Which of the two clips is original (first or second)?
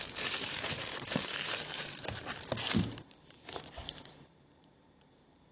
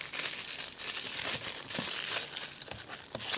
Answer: second